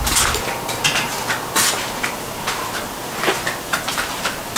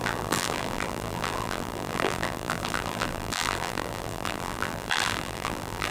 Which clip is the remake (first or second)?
second